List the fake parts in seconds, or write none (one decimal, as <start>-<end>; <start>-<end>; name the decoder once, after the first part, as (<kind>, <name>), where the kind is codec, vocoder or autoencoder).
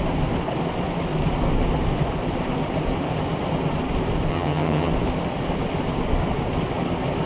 4.3-4.9 (vocoder, HiFi-GAN)